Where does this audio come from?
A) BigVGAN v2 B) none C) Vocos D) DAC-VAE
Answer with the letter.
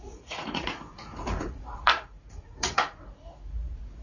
C